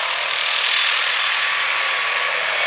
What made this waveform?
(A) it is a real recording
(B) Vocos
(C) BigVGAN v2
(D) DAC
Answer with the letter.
A